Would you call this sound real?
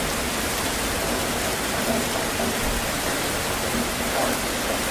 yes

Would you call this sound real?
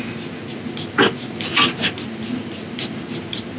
yes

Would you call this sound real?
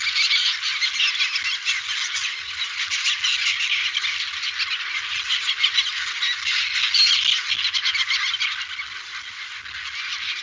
yes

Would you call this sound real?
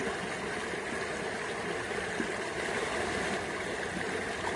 yes